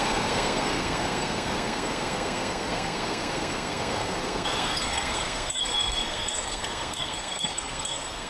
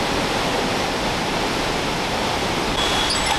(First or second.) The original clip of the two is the second